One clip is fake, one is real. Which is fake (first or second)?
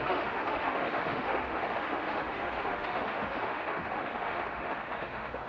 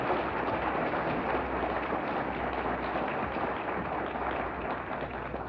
first